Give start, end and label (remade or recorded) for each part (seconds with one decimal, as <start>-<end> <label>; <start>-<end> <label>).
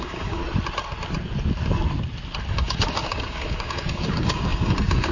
0.0-0.4 remade; 0.4-2.5 recorded; 2.5-5.1 remade